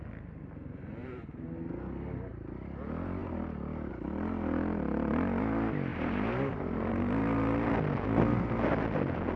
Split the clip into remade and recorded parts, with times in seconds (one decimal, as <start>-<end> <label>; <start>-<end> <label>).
0.0-1.0 recorded; 1.0-1.5 remade; 1.5-2.3 recorded; 2.3-2.8 remade; 2.8-3.2 recorded; 3.2-3.9 remade; 3.9-5.9 recorded; 5.9-7.7 remade; 7.7-9.4 recorded